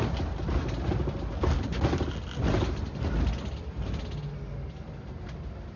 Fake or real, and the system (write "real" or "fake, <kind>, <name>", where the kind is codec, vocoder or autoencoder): real